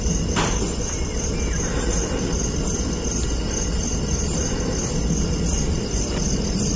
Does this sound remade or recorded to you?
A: recorded